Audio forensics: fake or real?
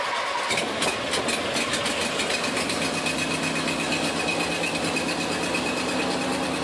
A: real